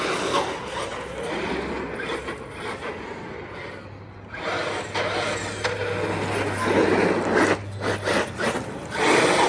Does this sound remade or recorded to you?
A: recorded